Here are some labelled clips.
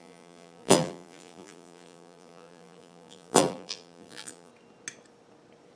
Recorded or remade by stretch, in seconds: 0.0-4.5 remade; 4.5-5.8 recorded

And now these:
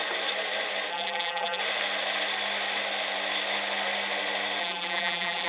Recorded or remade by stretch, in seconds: 0.0-0.9 recorded; 0.9-1.6 remade; 1.6-4.6 recorded; 4.6-5.5 remade

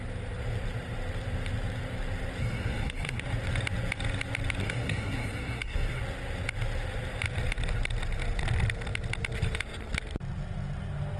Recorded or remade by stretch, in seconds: 0.0-2.4 recorded; 2.4-3.2 remade; 3.2-4.6 recorded; 4.6-6.0 remade; 6.0-11.2 recorded

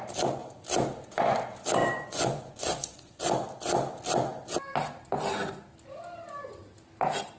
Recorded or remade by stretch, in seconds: 0.0-1.8 recorded; 1.8-3.2 remade; 3.2-7.4 recorded

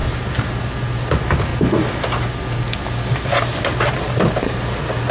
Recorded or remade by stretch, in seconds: 0.0-5.1 recorded

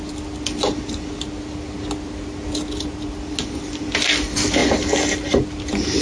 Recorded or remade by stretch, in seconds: 0.0-6.0 recorded

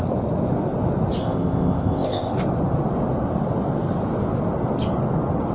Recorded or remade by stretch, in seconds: 0.0-1.2 recorded; 1.2-2.3 remade; 2.3-5.5 recorded

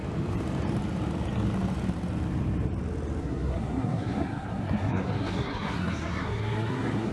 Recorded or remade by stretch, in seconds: 0.0-3.2 recorded; 3.2-7.1 remade